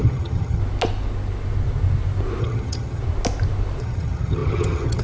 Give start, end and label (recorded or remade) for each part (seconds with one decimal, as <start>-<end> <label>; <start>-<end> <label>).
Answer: 0.0-0.6 remade; 0.6-2.4 recorded; 2.4-3.0 remade; 3.0-3.8 recorded; 3.8-5.0 remade